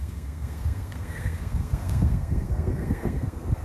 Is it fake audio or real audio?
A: fake